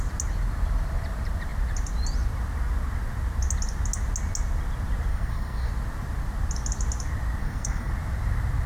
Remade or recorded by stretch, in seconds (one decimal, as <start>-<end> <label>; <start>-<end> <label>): 0.0-5.1 recorded; 5.1-5.7 remade; 5.7-7.4 recorded; 7.4-7.9 remade; 7.9-8.7 recorded